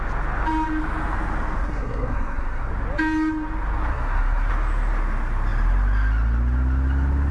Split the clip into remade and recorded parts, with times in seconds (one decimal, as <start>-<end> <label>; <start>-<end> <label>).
0.0-1.6 recorded; 1.6-2.7 remade; 2.7-3.9 recorded; 3.9-4.5 remade; 4.5-7.3 recorded